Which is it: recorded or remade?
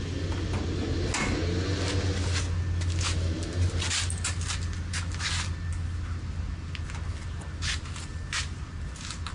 recorded